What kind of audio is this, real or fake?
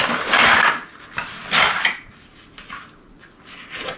real